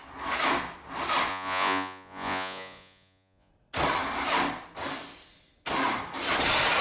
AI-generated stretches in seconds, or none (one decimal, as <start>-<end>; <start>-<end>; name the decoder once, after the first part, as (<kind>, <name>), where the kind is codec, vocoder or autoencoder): 1.3-3.5 (vocoder, Vocos)